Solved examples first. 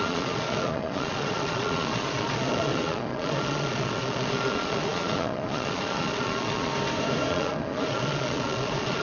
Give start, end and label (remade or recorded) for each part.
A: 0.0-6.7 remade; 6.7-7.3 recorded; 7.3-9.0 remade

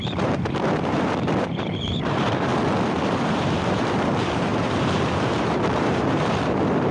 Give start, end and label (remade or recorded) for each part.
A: 0.0-2.5 remade; 2.5-3.0 recorded; 3.0-6.9 remade

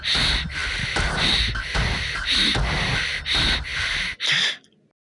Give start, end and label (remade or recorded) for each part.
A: 0.0-5.2 recorded

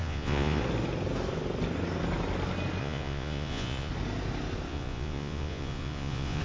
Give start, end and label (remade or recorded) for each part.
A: 0.0-0.6 remade; 0.6-2.8 recorded; 2.8-3.9 remade; 3.9-4.7 recorded; 4.7-6.4 remade